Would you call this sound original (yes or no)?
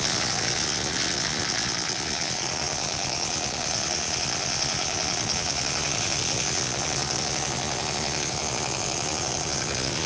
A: no